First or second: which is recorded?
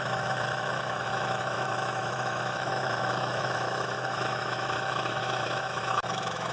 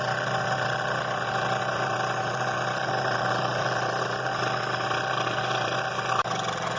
second